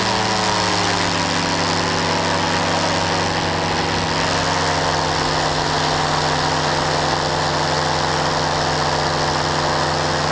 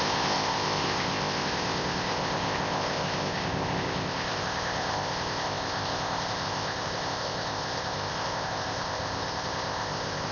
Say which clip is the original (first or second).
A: first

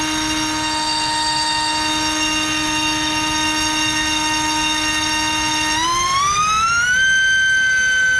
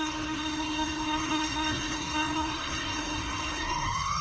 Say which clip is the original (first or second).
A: first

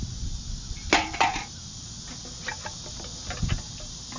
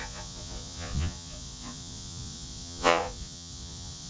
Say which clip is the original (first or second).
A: first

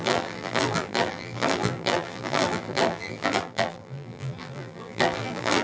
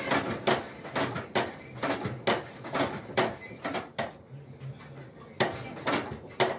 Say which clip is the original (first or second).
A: second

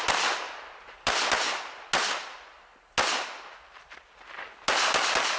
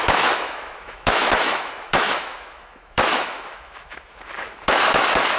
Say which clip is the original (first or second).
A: first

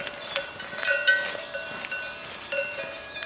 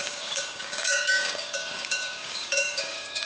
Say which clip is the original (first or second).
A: first